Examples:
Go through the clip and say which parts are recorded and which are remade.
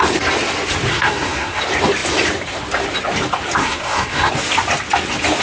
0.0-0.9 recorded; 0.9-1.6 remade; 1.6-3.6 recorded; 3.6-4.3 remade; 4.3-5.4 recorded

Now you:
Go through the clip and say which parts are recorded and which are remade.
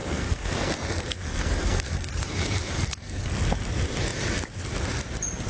0.0-3.3 remade; 3.3-5.5 recorded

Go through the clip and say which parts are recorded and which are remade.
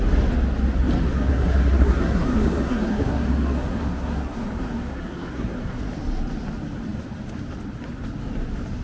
0.0-1.2 recorded; 1.2-5.8 remade; 5.8-8.8 recorded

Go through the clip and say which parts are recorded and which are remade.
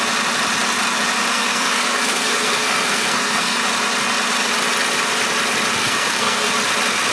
0.0-1.3 recorded; 1.3-3.6 remade; 3.6-5.8 recorded; 5.8-6.5 remade; 6.5-7.1 recorded